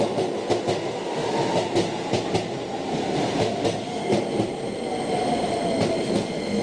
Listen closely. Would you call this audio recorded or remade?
recorded